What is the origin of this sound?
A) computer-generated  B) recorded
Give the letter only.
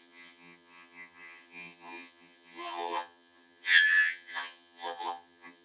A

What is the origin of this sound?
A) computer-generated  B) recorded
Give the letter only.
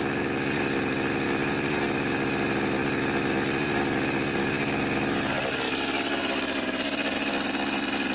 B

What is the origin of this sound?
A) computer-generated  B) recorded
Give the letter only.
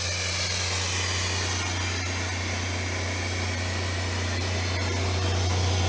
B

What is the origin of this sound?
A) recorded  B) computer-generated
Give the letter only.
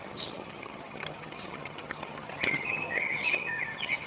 B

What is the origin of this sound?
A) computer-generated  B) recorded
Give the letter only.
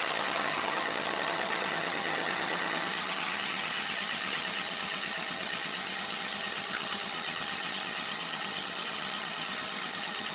A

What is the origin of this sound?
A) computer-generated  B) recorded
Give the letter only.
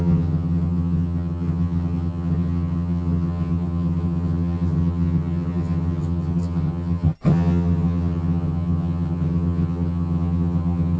A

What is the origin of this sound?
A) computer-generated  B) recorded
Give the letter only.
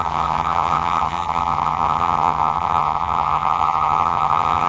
A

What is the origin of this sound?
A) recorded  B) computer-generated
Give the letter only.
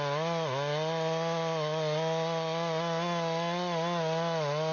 A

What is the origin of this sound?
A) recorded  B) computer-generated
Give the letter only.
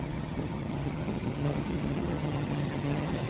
B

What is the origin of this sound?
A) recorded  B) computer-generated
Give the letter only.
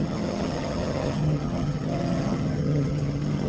B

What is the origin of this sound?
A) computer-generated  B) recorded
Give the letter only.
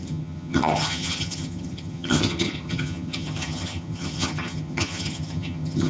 A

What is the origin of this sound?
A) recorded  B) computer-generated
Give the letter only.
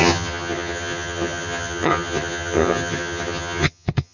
B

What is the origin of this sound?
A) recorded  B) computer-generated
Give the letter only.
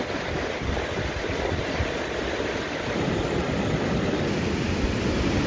A